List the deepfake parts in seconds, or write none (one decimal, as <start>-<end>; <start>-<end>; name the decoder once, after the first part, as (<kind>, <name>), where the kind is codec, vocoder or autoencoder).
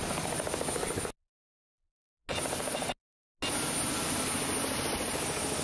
0.0-0.5 (vocoder, BigVGAN v2)